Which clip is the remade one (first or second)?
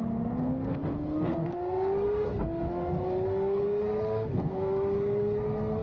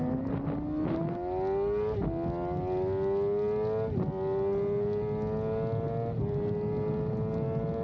first